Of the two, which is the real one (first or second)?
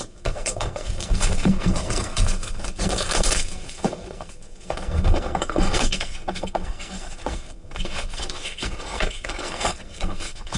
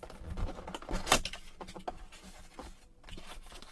second